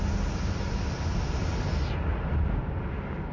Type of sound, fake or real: real